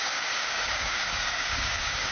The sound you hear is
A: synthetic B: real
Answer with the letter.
A